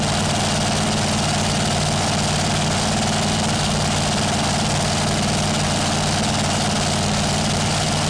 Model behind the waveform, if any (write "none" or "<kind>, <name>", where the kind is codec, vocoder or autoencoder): none